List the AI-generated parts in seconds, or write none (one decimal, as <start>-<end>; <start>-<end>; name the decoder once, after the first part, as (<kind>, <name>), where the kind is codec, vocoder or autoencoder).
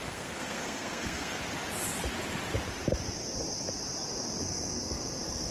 0.0-1.4 (codec, SNAC); 4.4-5.5